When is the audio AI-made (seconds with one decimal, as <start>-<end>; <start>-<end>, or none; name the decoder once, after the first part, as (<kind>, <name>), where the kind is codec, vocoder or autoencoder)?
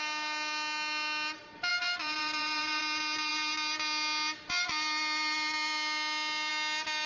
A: 1.7-2.8 (vocoder, BigVGAN v2)